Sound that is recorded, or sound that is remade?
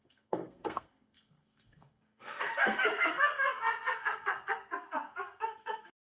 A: remade